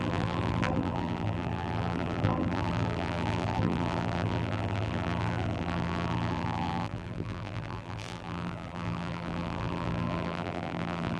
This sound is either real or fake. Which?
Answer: fake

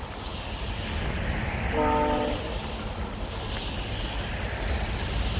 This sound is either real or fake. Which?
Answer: real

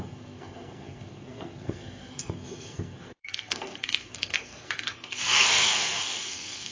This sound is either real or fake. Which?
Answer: fake